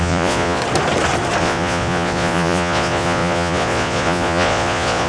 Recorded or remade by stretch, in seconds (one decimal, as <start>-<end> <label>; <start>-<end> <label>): 0.0-0.6 remade; 0.6-1.4 recorded; 1.4-5.1 remade